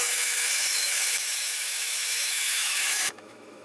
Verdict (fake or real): fake